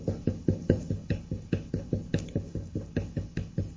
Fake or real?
fake